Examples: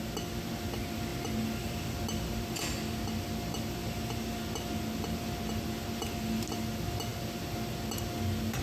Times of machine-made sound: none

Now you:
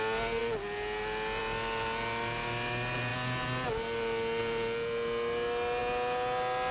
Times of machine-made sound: none